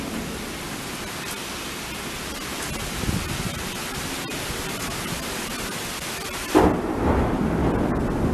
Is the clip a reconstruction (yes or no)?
no